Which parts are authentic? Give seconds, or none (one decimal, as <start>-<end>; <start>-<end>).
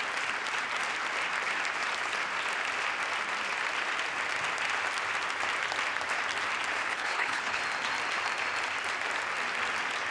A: 0.0-6.9; 7.6-10.1